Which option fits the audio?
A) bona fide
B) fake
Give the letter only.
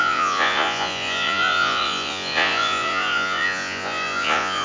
B